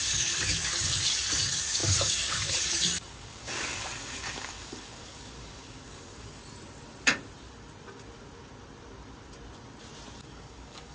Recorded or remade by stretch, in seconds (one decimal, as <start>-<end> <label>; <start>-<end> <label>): 0.0-6.4 remade; 6.4-10.2 recorded; 10.2-10.9 remade